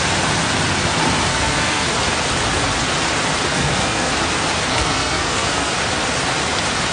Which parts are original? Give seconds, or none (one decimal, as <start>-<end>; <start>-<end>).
0.0-1.3; 1.9-3.5; 4.1-4.7; 5.7-6.9